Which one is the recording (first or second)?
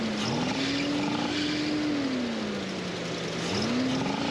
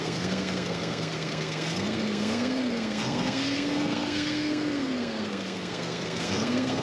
first